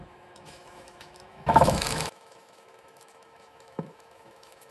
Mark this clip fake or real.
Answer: fake